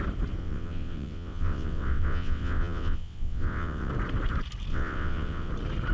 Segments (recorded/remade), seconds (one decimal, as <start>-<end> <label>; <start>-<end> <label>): 0.0-0.4 recorded; 0.4-3.9 remade; 3.9-4.7 recorded; 4.7-5.5 remade; 5.5-5.9 recorded

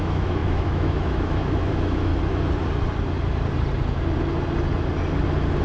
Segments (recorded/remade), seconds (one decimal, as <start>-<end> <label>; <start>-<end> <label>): 0.0-2.1 remade; 2.1-5.6 recorded